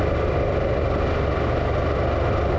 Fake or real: real